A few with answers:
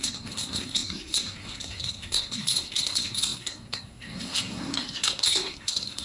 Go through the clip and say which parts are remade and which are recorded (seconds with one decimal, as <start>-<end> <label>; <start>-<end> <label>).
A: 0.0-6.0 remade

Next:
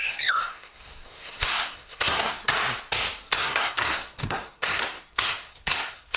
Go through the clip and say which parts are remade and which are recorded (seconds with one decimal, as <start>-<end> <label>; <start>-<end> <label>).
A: 0.0-2.5 remade; 2.5-3.3 recorded; 3.3-6.2 remade

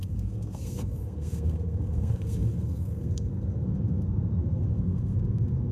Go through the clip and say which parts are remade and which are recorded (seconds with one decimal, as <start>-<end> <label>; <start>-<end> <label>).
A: 0.0-5.7 remade

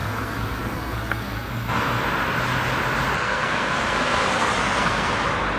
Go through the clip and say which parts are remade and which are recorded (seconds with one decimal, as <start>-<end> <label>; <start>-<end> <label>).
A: 0.0-2.0 remade; 2.0-3.1 recorded; 3.1-5.1 remade; 5.1-5.6 recorded

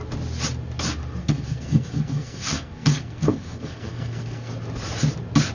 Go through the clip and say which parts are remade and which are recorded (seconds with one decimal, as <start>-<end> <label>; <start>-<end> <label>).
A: 0.0-1.2 recorded; 1.2-4.5 remade; 4.5-5.5 recorded

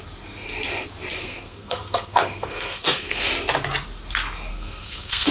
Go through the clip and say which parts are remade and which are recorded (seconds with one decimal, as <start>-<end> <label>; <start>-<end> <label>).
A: 0.0-1.2 recorded; 1.2-3.3 remade; 3.3-4.5 recorded; 4.5-5.3 remade